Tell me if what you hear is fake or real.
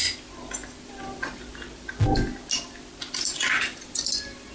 real